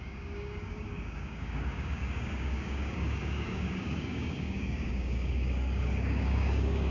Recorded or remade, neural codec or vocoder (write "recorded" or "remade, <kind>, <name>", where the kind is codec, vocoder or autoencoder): remade, codec, DAC